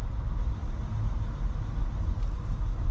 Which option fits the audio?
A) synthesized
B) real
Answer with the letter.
B